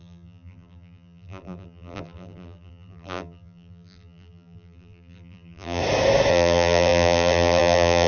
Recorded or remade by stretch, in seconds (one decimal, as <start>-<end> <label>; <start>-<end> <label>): 0.0-5.8 remade; 5.8-6.3 recorded; 6.3-8.1 remade